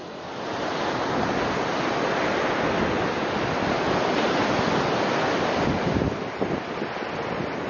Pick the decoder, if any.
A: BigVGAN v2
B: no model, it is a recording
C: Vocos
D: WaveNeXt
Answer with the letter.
B